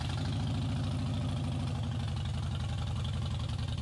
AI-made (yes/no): no